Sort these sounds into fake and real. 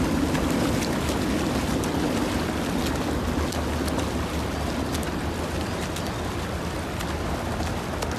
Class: real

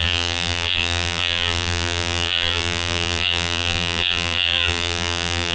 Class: fake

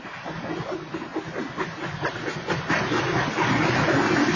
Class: real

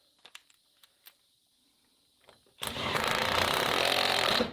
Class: fake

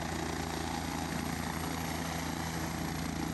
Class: real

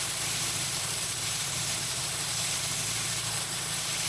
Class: fake